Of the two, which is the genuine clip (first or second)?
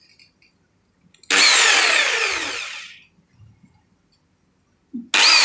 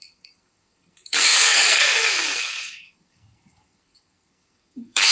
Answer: first